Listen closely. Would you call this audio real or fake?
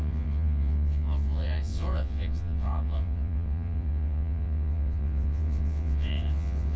fake